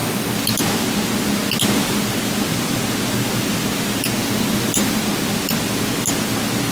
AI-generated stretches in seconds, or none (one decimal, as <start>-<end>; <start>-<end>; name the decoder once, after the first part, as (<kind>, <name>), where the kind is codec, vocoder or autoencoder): 0.0-0.6 (vocoder, BigVGAN v2); 4.2-5.0